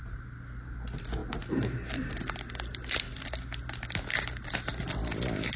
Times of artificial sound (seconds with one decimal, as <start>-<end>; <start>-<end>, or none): none